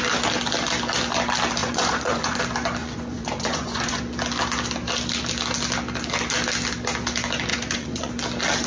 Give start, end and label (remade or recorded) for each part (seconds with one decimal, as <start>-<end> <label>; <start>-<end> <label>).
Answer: 0.0-1.6 recorded; 1.6-2.4 remade; 2.4-2.8 recorded; 2.8-4.0 remade; 4.0-7.5 recorded; 7.5-8.1 remade; 8.1-8.7 recorded